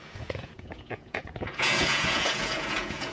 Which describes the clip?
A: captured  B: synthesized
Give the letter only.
B